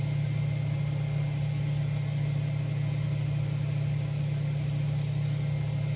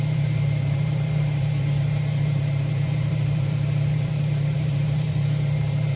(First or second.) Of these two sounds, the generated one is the second